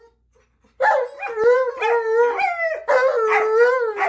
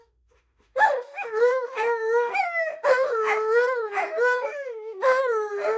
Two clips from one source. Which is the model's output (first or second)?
second